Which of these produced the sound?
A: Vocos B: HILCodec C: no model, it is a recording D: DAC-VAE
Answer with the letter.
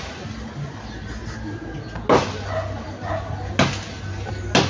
C